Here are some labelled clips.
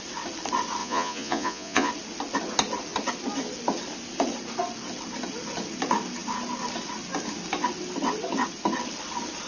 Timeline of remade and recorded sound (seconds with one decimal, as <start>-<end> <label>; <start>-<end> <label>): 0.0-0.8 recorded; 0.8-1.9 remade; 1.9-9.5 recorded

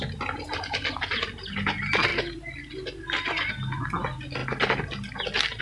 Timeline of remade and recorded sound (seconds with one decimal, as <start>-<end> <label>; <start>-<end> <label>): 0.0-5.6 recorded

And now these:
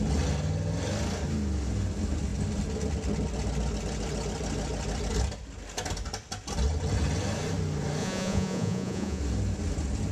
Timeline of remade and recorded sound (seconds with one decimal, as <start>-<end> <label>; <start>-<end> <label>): 0.0-8.0 recorded; 8.0-9.2 remade; 9.2-10.1 recorded